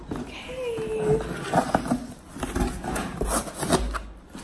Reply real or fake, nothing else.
real